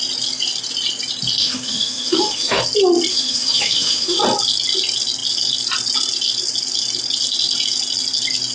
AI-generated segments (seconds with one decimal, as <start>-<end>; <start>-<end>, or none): 1.4-2.6; 3.1-4.2